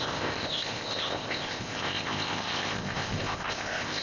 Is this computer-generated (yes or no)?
yes